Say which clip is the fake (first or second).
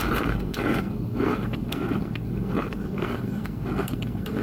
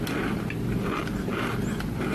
first